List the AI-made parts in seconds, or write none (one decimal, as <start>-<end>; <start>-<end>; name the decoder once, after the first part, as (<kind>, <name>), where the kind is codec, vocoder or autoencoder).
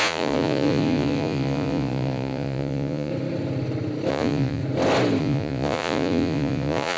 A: 0.0-3.1 (vocoder, Vocos); 4.1-4.6; 5.2-7.0